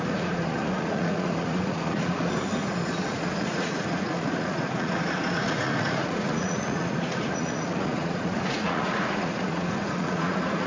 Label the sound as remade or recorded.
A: remade